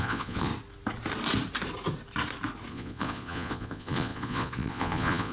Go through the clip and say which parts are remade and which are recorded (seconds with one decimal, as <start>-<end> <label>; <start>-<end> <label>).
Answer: 0.0-0.5 remade; 0.5-2.7 recorded; 2.7-5.3 remade